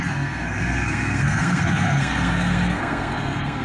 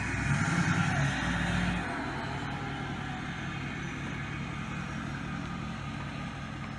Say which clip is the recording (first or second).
second